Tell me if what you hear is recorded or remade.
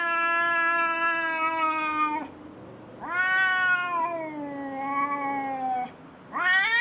recorded